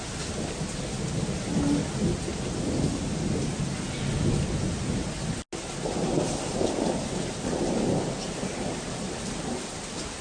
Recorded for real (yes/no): yes